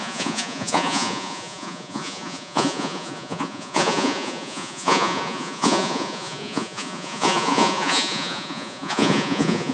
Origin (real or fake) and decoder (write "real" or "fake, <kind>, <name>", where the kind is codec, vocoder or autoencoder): fake, vocoder, Vocos